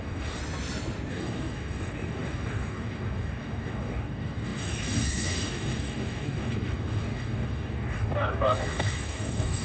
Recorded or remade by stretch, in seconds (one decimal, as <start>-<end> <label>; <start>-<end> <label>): 0.0-0.4 remade; 0.4-1.1 recorded; 1.1-9.6 remade